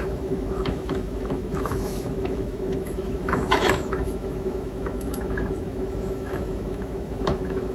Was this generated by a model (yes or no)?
yes